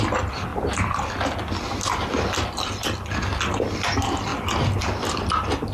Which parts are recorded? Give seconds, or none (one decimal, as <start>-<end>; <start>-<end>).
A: 0.0-5.7